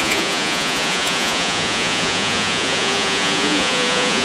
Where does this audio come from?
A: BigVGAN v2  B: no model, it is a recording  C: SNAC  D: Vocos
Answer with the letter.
D